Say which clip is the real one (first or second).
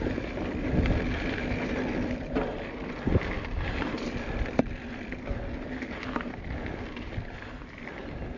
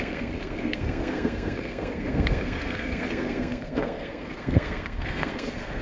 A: first